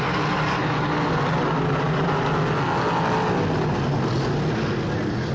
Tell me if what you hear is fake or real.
real